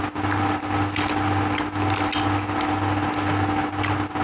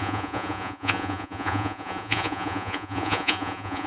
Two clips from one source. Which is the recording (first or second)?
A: first